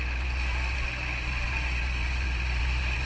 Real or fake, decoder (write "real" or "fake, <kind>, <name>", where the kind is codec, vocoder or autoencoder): real